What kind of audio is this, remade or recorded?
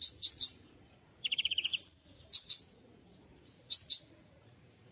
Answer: remade